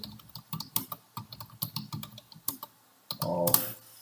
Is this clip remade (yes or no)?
no